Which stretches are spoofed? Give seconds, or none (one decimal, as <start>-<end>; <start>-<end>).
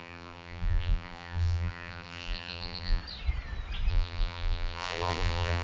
0.0-3.0; 3.9-5.6